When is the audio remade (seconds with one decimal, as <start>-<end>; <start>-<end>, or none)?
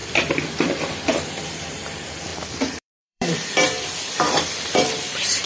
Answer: 1.1-5.5